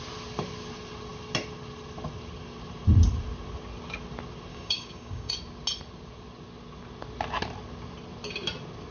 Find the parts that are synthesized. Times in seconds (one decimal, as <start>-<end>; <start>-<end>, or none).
4.5-5.3